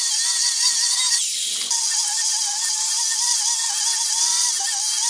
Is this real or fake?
real